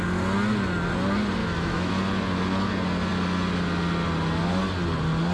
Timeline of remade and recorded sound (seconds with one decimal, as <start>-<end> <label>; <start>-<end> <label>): 0.0-1.4 recorded; 1.4-1.9 remade; 1.9-5.3 recorded